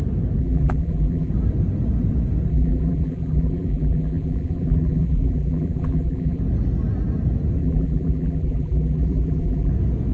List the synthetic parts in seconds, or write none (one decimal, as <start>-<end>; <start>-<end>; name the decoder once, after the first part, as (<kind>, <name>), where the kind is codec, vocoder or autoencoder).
0.4-1.3 (vocoder, BigVGAN v2); 2.5-6.4; 7.6-9.7